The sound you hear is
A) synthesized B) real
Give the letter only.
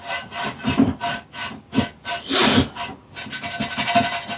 B